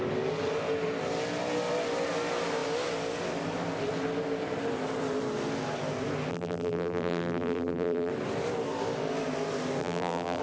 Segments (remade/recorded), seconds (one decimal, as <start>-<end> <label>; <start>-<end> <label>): 0.0-6.3 recorded; 6.3-8.1 remade; 8.1-9.8 recorded; 9.8-10.4 remade